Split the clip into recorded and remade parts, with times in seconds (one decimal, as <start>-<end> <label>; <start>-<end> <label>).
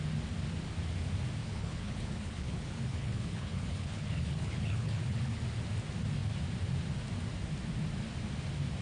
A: 0.0-1.4 recorded; 1.4-5.4 remade; 5.4-8.8 recorded